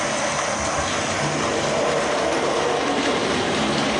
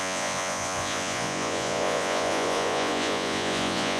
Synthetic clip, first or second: second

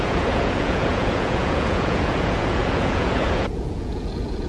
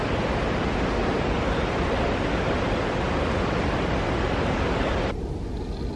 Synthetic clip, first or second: first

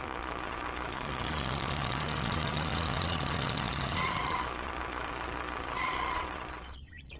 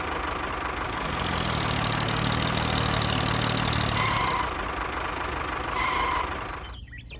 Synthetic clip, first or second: first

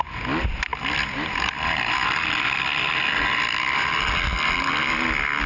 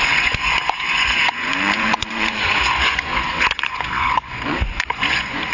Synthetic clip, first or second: second